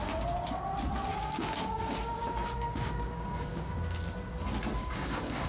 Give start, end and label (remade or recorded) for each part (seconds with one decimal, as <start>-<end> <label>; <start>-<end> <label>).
0.0-1.1 recorded; 1.1-3.7 remade; 3.7-4.8 recorded; 4.8-5.5 remade